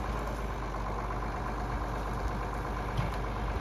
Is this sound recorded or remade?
recorded